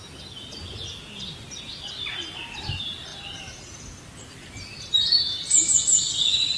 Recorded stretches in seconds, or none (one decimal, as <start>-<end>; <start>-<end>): 0.0-6.6